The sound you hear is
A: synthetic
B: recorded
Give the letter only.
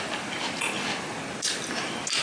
B